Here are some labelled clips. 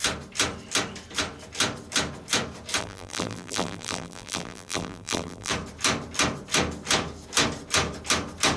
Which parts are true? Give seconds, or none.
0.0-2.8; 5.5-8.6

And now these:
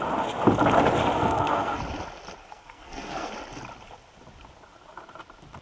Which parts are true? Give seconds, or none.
0.0-1.0; 1.8-2.4; 3.3-5.6